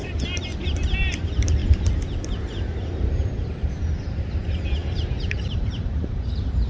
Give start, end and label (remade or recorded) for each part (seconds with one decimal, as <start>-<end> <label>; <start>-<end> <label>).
0.0-0.5 remade; 0.5-1.0 recorded; 1.0-1.6 remade; 1.6-2.3 recorded; 2.3-6.7 remade